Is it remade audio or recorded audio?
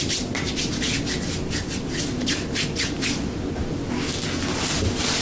recorded